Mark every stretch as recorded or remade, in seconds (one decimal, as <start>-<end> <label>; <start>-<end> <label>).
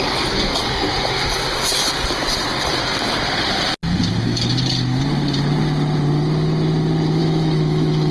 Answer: 0.0-7.2 recorded; 7.2-8.1 remade